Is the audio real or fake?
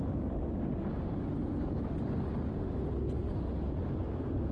real